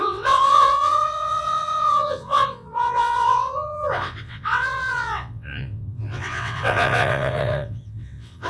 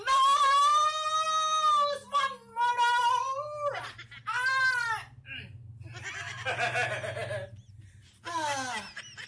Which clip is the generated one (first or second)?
first